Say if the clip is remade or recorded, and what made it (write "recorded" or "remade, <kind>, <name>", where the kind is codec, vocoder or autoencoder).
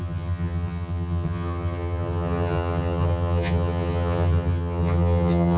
remade, vocoder, HiFi-GAN